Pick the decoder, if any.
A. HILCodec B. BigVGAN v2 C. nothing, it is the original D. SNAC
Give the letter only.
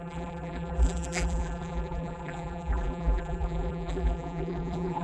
B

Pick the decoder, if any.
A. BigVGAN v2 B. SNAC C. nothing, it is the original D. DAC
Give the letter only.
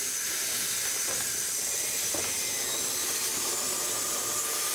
C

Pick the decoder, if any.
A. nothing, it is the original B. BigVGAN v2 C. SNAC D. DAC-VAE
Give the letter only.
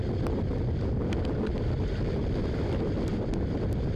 B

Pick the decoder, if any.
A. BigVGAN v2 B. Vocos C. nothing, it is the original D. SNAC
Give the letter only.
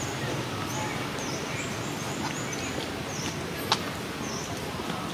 C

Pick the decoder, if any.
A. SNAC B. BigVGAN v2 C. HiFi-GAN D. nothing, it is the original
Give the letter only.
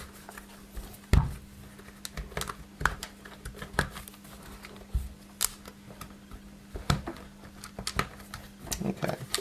D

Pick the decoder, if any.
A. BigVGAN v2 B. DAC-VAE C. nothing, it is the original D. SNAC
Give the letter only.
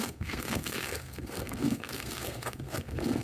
D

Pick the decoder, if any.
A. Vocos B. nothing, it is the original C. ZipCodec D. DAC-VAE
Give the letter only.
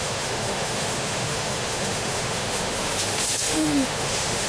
D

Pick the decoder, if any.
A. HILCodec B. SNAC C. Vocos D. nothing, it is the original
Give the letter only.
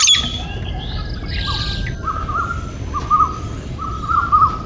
D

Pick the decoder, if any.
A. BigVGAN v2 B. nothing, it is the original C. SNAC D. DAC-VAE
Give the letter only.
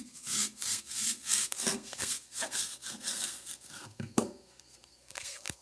C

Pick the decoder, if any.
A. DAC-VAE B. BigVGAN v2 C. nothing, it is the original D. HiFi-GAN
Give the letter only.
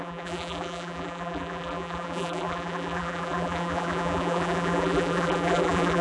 B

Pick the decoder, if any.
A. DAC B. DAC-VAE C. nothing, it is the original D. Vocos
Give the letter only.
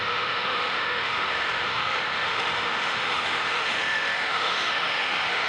B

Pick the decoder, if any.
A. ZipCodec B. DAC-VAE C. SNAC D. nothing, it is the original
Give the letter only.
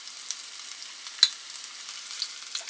D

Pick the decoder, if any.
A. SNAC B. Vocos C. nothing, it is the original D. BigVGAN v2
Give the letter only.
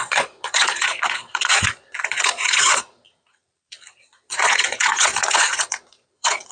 B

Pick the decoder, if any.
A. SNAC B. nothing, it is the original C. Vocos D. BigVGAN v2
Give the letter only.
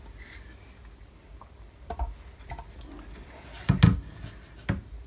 B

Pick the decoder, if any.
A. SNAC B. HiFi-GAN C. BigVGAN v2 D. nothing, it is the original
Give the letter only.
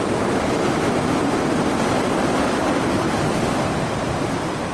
C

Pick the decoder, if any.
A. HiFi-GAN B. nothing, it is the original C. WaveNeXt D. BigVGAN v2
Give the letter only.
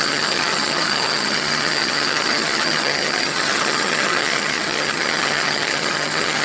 A